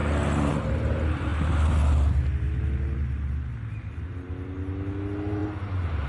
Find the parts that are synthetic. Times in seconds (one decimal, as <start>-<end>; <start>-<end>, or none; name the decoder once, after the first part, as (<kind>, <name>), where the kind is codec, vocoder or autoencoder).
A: none